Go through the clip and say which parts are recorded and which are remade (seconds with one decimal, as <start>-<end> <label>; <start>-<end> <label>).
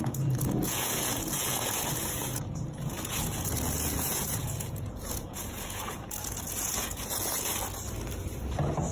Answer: 0.0-7.5 remade; 7.5-8.9 recorded